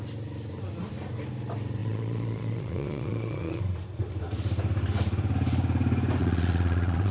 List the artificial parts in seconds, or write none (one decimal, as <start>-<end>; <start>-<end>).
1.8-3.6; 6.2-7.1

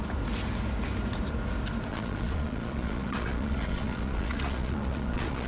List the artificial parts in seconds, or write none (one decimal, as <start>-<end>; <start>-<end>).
1.9-5.5

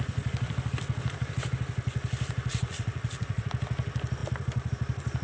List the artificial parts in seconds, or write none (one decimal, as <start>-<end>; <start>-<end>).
2.5-3.5

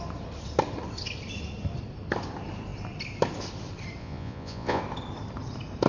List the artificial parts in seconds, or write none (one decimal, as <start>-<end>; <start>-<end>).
4.0-4.8

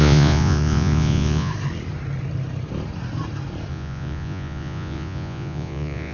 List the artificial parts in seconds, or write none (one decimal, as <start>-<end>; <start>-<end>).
0.0-1.5; 3.7-6.1